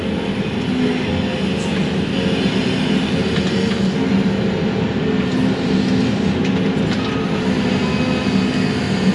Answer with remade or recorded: recorded